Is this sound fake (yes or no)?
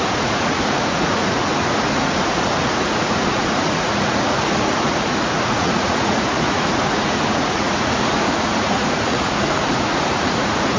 yes